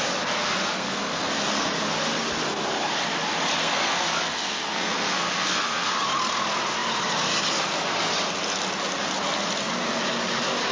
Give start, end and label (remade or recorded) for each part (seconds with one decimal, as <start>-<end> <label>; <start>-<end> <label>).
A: 0.0-0.6 recorded; 0.6-1.7 remade; 1.7-3.6 recorded; 3.6-6.0 remade; 6.0-10.7 recorded